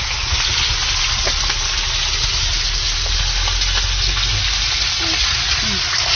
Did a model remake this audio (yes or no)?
no